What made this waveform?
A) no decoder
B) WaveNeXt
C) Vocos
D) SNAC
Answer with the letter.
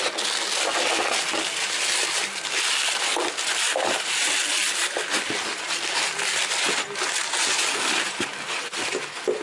A